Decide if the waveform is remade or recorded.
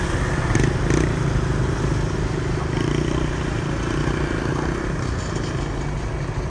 recorded